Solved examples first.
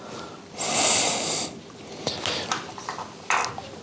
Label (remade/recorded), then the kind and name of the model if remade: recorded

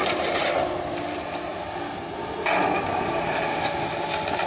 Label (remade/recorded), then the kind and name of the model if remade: recorded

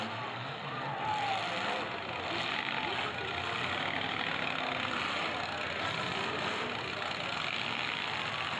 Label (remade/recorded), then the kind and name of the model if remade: recorded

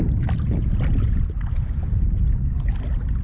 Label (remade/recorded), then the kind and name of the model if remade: recorded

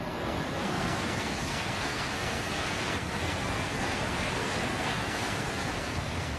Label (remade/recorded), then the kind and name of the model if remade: remade, codec, SNAC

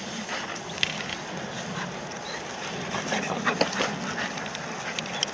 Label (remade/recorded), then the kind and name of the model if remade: recorded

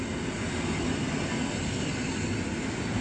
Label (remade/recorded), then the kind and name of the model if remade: recorded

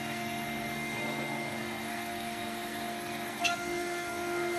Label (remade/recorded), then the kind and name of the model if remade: remade, codec, SNAC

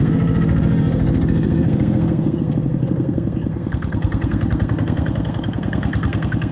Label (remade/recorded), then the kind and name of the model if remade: remade, codec, SNAC